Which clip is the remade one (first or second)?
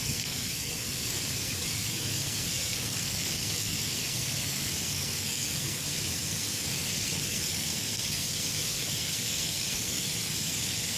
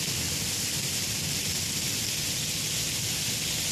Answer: first